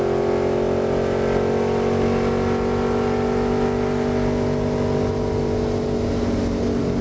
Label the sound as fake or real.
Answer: real